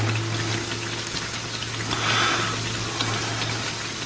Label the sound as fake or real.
real